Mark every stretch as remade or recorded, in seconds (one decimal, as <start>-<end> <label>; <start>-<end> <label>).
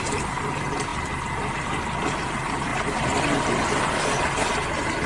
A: 0.0-0.9 recorded; 0.9-1.5 remade; 1.5-5.1 recorded